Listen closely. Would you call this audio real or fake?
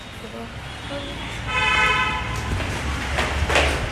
real